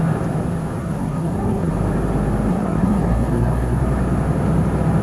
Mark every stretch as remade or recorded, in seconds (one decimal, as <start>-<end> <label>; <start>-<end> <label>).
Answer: 0.0-0.8 recorded; 0.8-1.7 remade; 1.7-2.5 recorded; 2.5-3.8 remade; 3.8-5.0 recorded